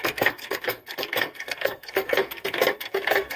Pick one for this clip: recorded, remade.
remade